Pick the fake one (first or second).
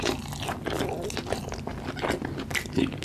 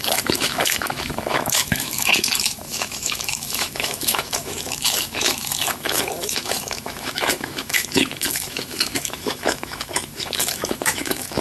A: second